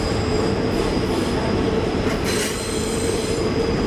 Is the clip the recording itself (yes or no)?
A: yes